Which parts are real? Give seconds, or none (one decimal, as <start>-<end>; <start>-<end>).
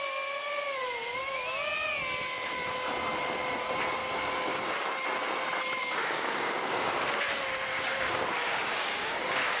0.0-4.0; 4.7-5.8; 6.9-7.7